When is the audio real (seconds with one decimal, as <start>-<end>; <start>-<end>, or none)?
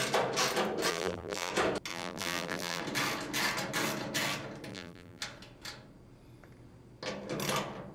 0.0-0.9; 1.5-1.9; 2.8-4.7; 5.2-7.9